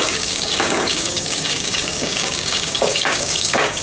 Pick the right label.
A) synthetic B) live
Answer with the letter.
A